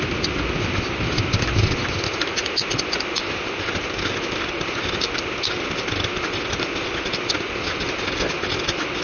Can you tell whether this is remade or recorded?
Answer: recorded